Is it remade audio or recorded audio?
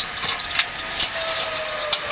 recorded